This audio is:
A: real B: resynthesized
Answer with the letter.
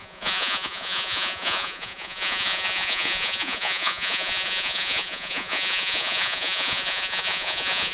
B